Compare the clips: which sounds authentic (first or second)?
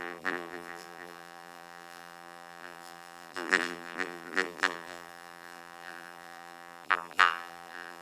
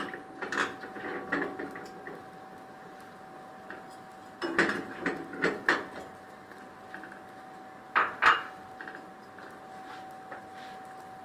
second